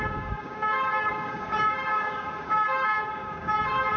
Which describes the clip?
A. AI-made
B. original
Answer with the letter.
A